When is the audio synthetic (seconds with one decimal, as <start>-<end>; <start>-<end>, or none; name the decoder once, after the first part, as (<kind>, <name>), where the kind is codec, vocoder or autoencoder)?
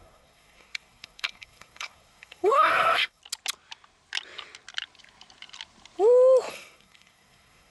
0.0-3.2 (codec, SNAC); 6.5-7.7